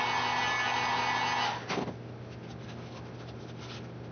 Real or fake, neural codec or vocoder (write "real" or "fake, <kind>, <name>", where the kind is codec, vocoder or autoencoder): real